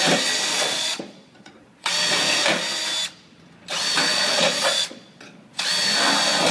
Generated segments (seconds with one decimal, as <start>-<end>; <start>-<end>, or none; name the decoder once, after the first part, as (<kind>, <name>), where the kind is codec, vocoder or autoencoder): 0.5-1.9 (vocoder, Vocos); 4.1-5.7